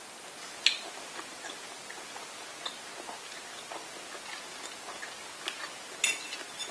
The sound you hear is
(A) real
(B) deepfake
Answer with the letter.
A